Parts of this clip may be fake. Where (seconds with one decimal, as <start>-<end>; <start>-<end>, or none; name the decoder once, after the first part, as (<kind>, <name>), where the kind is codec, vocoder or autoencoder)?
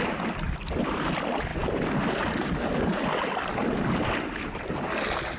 none